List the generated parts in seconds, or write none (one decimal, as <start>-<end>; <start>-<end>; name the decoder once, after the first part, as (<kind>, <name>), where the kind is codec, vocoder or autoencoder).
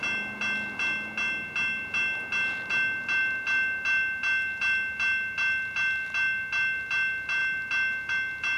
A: none